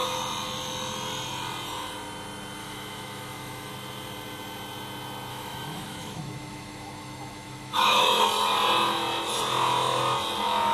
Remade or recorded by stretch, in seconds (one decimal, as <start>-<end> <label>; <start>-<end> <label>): 0.0-2.6 recorded; 2.6-3.7 remade; 3.7-5.3 recorded; 5.3-8.2 remade; 8.2-10.7 recorded